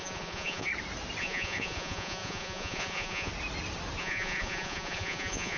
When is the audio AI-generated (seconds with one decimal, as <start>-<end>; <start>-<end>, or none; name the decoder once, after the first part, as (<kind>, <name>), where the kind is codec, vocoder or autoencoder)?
0.0-0.7 (vocoder, Vocos); 1.2-3.3; 4.0-5.6